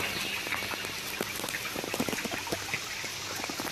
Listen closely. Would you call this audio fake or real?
real